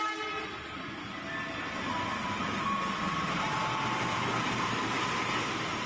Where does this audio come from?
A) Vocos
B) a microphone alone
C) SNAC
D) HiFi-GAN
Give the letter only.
B